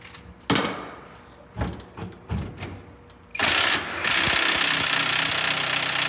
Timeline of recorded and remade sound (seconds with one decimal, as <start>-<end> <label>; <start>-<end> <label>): 0.0-6.1 recorded